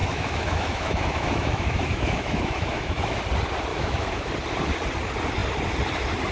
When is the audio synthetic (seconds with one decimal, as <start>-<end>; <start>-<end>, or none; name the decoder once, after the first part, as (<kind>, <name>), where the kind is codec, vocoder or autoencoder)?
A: 0.0-3.2 (autoencoder, DAC-VAE); 3.7-4.3